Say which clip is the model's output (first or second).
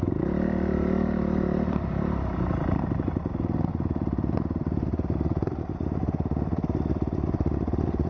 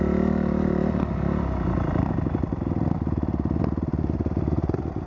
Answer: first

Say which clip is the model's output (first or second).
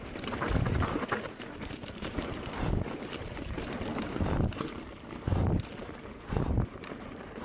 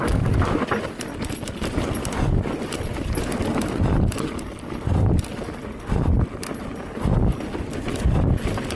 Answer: first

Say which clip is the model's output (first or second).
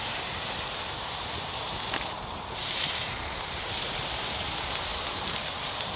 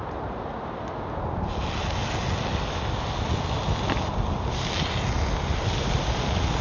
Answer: first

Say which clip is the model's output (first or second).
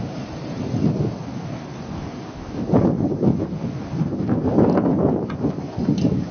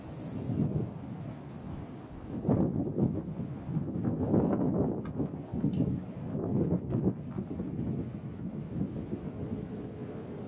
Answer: first